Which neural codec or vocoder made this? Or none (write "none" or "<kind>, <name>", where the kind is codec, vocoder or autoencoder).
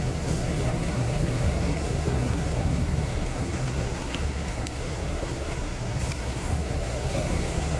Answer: codec, SNAC